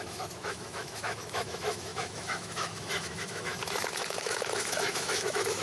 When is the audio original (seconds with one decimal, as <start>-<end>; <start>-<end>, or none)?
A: none